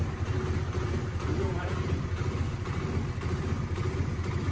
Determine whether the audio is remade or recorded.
recorded